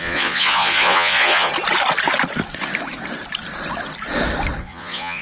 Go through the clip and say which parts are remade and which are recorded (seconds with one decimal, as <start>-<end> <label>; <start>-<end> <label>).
0.0-1.5 remade; 1.5-4.6 recorded; 4.6-5.2 remade

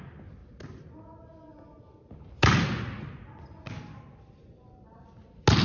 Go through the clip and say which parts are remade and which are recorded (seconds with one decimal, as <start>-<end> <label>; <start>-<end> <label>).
0.0-5.6 recorded

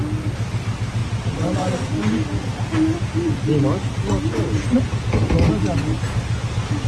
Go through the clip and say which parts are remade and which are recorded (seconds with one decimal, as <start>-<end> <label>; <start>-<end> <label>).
0.0-1.0 recorded; 1.0-1.9 remade; 1.9-6.9 recorded